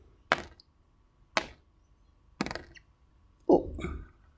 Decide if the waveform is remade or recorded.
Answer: recorded